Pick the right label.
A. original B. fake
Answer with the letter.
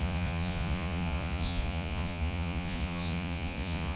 B